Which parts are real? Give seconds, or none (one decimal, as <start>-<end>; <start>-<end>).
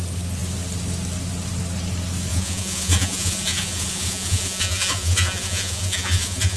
0.0-2.3